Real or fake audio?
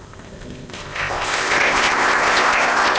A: fake